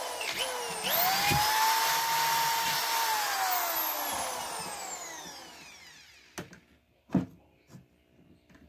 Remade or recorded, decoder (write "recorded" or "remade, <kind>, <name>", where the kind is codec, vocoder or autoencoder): recorded